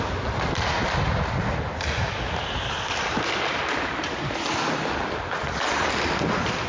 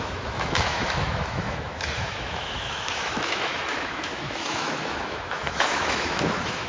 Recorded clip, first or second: first